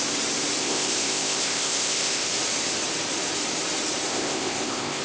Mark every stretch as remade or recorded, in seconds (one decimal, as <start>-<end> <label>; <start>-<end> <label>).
0.0-0.6 recorded; 0.6-2.3 remade; 2.3-4.1 recorded; 4.1-5.0 remade